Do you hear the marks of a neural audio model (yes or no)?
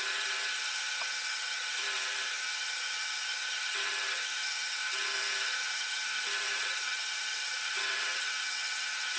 yes